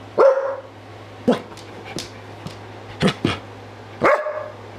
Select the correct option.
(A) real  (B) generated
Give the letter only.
A